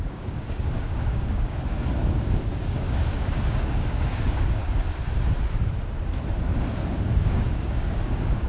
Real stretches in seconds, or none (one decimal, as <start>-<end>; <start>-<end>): 4.6-6.7